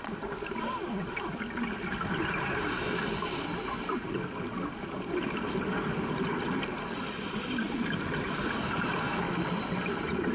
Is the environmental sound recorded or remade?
recorded